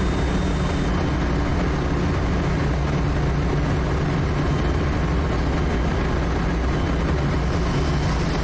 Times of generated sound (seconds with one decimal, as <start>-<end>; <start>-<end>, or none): none